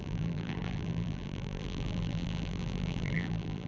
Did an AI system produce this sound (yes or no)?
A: yes